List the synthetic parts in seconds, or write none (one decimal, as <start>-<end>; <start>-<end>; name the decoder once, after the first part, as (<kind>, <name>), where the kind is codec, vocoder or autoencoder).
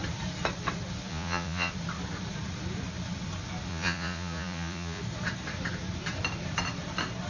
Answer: 1.1-1.7 (vocoder, Vocos); 3.7-5.0